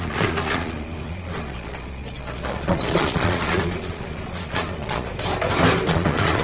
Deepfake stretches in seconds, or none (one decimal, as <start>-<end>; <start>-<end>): 0.0-5.1; 5.9-6.4